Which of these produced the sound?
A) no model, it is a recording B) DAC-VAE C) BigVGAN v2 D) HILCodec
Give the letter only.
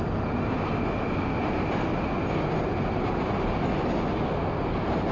A